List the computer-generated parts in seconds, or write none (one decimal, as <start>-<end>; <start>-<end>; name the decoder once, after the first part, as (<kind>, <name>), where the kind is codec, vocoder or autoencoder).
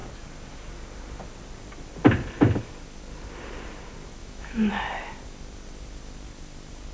4.2-4.7 (autoencoder, DAC-VAE)